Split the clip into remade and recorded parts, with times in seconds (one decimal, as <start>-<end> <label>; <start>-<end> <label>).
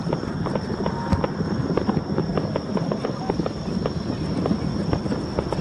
0.0-5.6 recorded